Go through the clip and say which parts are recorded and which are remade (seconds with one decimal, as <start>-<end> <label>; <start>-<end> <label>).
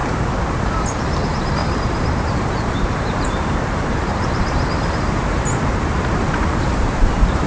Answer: 0.0-7.5 remade